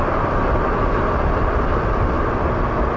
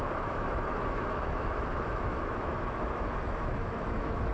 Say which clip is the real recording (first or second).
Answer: first